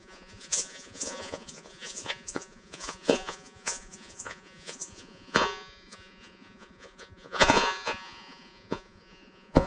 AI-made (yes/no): yes